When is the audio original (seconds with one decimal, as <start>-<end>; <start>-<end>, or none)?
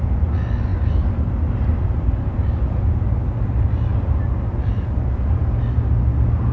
0.0-6.5